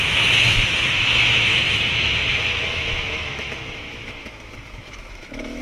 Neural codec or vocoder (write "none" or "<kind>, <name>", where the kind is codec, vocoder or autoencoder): autoencoder, DAC-VAE